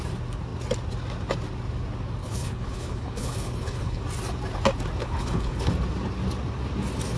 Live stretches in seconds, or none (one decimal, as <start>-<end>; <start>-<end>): 0.0-2.2; 4.0-5.0; 5.7-7.2